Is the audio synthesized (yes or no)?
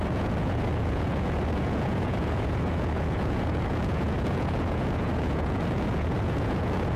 yes